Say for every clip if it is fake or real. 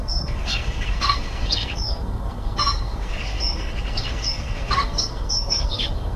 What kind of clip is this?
fake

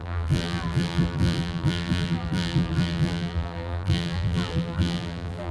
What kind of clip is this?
fake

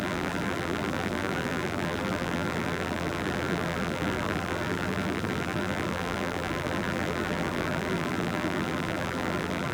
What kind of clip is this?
fake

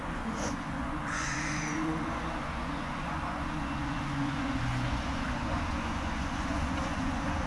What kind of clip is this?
fake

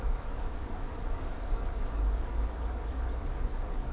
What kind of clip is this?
fake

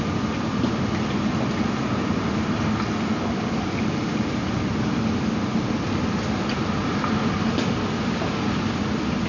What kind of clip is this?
real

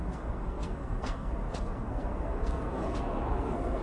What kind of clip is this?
fake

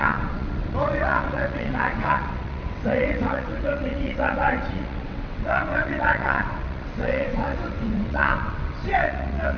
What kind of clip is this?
fake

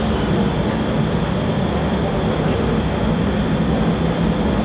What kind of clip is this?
real